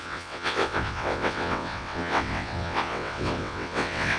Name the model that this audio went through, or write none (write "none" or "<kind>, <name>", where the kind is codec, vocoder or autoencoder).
vocoder, WaveNeXt